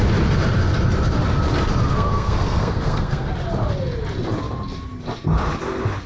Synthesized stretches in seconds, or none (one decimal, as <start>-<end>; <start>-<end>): 1.9-3.3